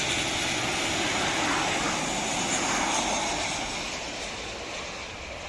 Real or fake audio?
real